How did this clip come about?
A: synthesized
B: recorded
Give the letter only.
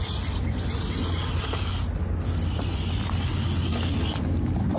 B